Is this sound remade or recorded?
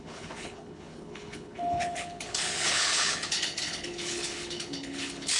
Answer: remade